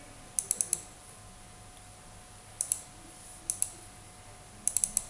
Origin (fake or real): real